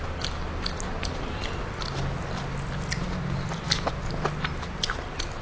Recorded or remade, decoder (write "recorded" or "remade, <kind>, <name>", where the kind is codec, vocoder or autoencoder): recorded